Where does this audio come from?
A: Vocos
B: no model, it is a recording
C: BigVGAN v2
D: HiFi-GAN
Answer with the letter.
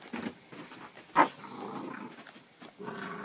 B